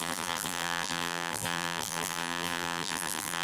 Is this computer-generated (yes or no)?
yes